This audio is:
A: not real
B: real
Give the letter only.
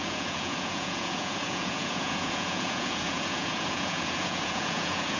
A